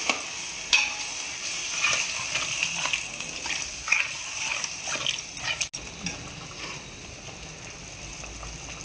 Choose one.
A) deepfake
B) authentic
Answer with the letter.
B